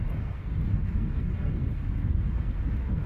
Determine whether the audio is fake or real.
fake